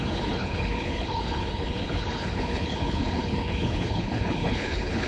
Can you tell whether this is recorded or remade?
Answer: remade